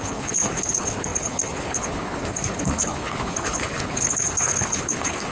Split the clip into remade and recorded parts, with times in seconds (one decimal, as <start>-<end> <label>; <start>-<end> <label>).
0.0-5.3 remade